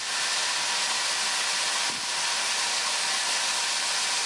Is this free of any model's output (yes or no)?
yes